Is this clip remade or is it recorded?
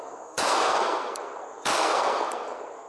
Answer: remade